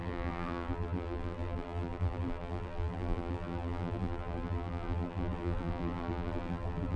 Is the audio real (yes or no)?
no